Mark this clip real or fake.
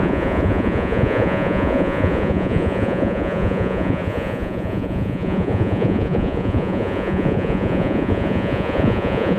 fake